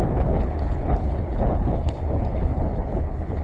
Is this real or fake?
fake